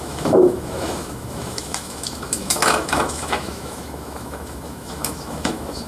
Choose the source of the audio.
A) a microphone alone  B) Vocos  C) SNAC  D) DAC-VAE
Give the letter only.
D